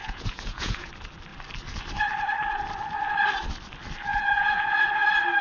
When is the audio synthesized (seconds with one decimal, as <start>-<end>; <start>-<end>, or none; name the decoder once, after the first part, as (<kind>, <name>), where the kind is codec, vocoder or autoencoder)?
0.0-0.9 (vocoder, Vocos); 4.1-4.9